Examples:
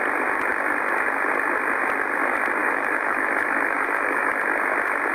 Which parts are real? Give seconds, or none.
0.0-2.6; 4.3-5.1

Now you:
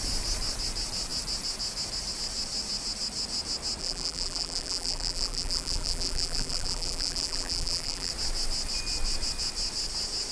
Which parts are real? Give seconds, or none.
0.0-3.8; 8.1-10.3

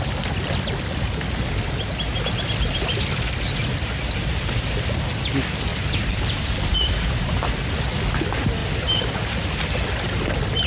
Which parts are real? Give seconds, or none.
0.0-5.7; 7.8-8.6; 9.7-10.7

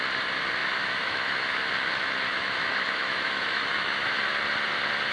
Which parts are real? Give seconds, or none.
0.0-0.6; 1.7-2.3; 4.2-5.1